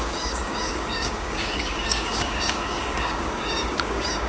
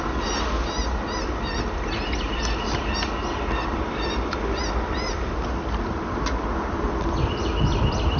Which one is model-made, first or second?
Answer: first